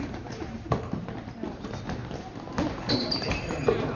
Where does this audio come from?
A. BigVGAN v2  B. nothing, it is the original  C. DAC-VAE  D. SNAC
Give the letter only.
A